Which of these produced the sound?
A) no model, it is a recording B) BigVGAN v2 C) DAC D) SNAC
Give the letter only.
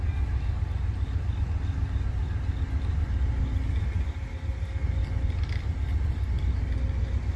A